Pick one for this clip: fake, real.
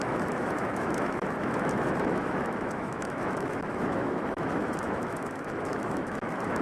fake